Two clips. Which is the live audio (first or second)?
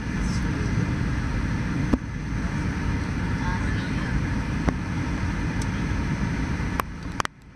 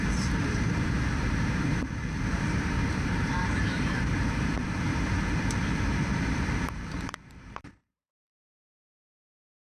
first